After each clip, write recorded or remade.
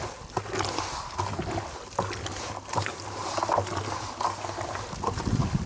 recorded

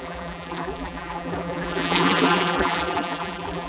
remade